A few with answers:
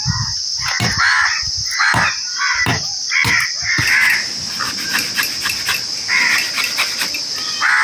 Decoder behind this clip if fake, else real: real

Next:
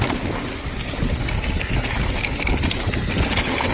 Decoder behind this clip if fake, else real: real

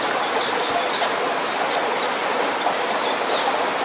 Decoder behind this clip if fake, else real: real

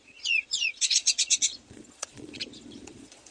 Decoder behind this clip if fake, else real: fake, vocoder, Vocos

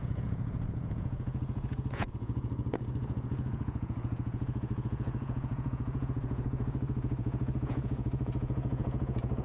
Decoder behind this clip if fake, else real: fake, vocoder, Vocos